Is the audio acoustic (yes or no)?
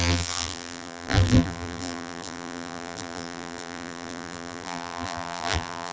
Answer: no